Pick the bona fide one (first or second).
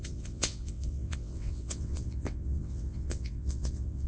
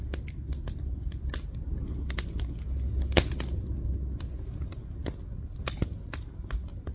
second